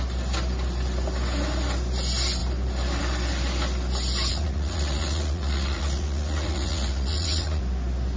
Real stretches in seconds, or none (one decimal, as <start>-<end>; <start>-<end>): 0.0-4.3; 7.6-8.2

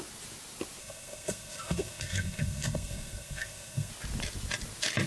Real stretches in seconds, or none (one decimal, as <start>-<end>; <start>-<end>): 0.0-0.8; 3.9-5.1

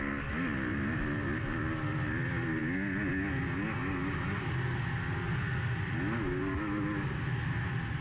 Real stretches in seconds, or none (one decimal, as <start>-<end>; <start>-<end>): 0.0-8.0

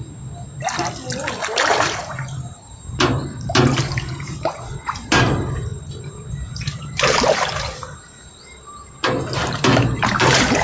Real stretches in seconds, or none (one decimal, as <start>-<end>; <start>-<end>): 0.0-1.6